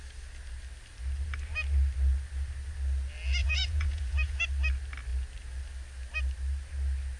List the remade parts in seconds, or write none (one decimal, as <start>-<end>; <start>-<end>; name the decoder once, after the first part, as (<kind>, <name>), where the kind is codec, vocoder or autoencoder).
3.4-4.4 (vocoder, Vocos)